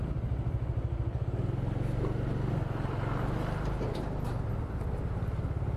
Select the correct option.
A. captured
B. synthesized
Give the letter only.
A